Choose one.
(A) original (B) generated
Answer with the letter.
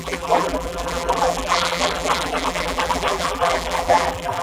B